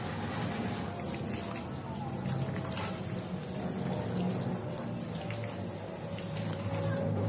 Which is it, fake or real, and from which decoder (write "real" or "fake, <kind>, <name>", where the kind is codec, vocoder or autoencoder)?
real